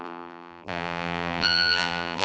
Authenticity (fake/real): fake